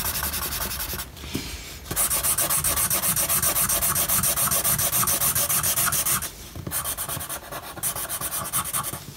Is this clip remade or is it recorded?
recorded